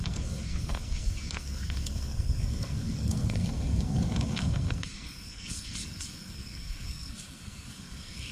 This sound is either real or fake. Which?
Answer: fake